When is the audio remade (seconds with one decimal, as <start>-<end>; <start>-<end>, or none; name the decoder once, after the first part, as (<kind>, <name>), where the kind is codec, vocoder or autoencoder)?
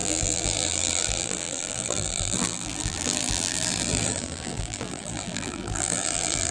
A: 0.0-6.5 (vocoder, BigVGAN v2)